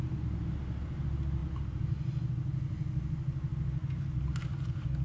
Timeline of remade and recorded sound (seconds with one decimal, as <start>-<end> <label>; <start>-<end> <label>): 0.0-5.0 recorded